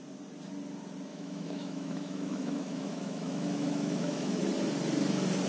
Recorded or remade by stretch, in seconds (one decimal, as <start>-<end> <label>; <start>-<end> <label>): 0.0-1.1 recorded; 1.1-4.4 remade; 4.4-5.5 recorded

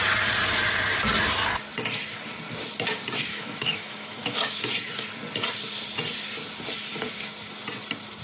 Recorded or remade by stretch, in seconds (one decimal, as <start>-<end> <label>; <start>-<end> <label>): 0.0-3.3 recorded; 3.3-4.7 remade; 4.7-8.2 recorded